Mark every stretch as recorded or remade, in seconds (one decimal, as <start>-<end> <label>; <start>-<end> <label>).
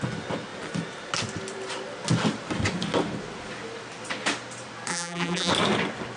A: 0.0-4.9 recorded; 4.9-5.5 remade; 5.5-6.2 recorded